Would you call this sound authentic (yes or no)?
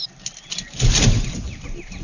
yes